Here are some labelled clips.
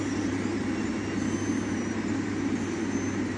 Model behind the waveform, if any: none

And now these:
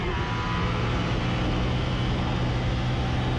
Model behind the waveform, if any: none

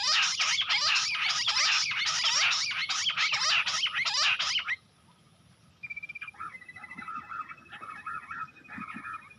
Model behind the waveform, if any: none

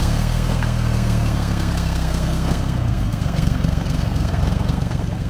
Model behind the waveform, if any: codec, SNAC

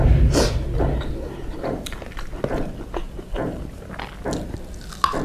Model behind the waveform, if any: none